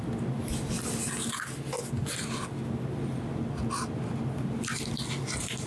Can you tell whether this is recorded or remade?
recorded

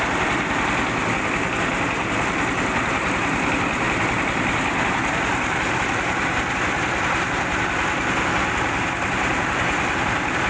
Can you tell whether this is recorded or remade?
recorded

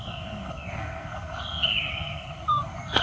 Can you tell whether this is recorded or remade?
remade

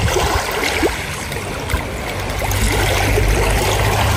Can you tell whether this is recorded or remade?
recorded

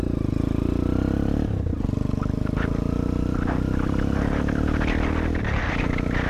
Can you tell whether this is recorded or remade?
recorded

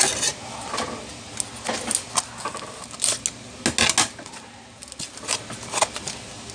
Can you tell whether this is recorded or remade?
recorded